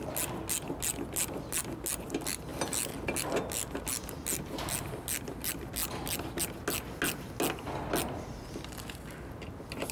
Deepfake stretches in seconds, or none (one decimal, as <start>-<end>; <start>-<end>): none